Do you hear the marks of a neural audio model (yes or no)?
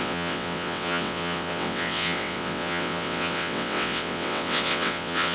yes